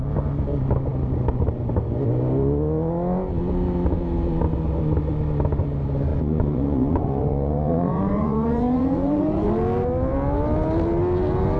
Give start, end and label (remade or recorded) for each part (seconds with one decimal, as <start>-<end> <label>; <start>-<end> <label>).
0.0-6.1 recorded; 6.1-9.5 remade; 9.5-11.6 recorded